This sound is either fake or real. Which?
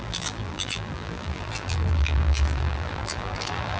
fake